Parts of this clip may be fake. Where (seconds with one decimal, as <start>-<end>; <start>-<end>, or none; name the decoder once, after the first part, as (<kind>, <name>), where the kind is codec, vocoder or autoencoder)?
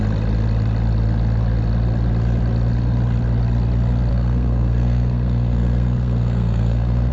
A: 4.1-7.1 (codec, SNAC)